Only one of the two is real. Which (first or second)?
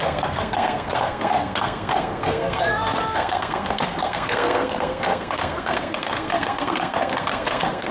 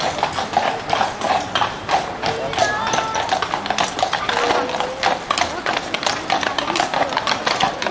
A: second